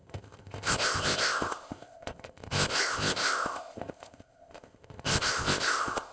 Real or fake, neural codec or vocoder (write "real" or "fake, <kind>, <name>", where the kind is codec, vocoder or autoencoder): fake, codec, ZipCodec